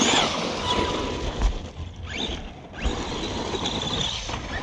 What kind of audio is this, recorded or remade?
recorded